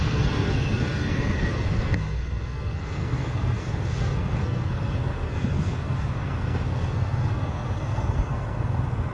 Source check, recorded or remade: remade